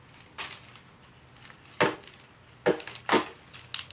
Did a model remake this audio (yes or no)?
no